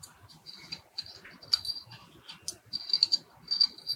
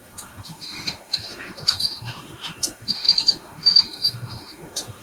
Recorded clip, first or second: first